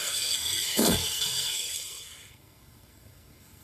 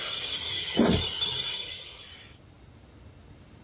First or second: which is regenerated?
first